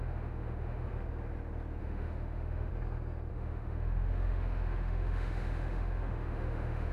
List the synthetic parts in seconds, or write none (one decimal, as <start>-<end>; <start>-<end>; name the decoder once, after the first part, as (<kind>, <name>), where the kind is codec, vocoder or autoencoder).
0.0-0.9 (autoencoder, DAC-VAE); 1.8-2.7; 3.3-6.9